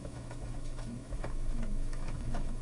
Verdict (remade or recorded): remade